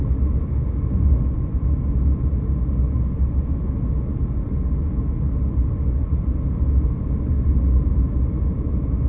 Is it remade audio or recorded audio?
recorded